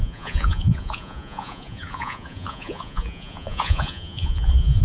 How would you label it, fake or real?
fake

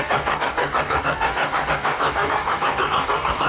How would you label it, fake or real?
fake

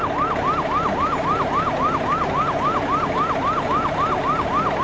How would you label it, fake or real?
real